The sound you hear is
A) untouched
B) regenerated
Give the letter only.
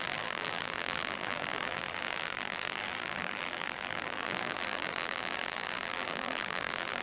B